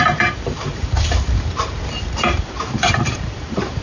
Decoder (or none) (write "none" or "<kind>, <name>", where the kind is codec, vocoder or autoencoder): vocoder, BigVGAN v2